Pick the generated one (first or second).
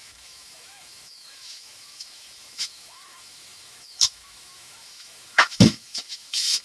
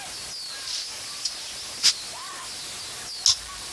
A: first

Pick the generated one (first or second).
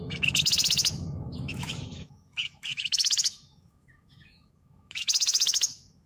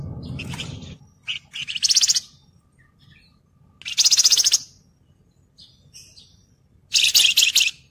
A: first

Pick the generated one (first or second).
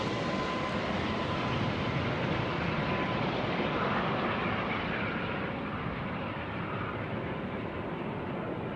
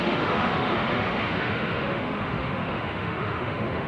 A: second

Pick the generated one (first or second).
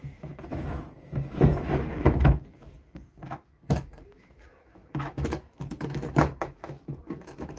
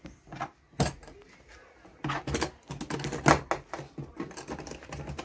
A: first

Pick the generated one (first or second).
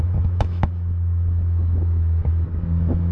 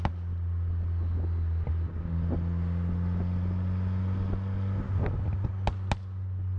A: first